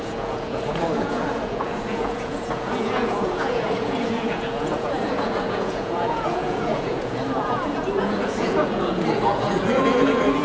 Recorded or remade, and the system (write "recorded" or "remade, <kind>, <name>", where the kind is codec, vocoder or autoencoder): remade, vocoder, Vocos